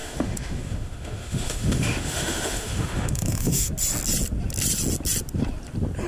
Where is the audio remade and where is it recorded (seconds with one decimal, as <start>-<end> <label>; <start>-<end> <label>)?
0.0-3.7 remade; 3.7-6.1 recorded